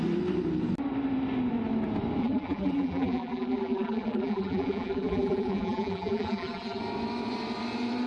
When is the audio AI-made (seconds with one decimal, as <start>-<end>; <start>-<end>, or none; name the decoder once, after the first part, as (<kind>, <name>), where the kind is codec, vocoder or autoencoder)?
2.2-6.8 (vocoder, BigVGAN v2)